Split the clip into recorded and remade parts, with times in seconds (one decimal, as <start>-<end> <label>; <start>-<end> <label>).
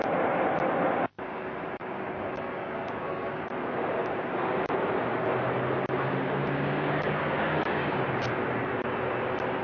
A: 0.0-1.8 recorded; 1.8-3.7 remade; 3.7-6.4 recorded; 6.4-8.0 remade; 8.0-9.6 recorded